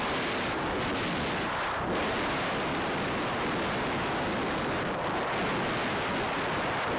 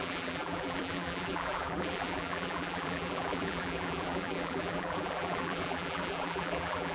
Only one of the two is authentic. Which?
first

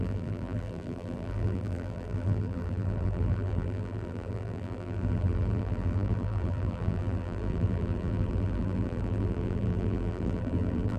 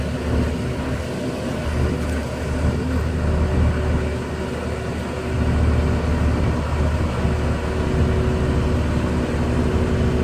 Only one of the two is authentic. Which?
second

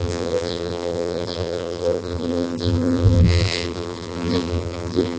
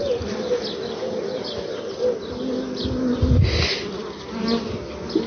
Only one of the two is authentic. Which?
second